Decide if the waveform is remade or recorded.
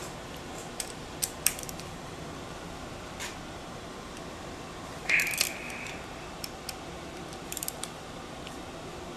remade